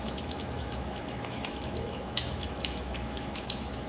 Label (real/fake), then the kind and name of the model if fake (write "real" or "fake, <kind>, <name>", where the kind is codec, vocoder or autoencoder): fake, autoencoder, DAC-VAE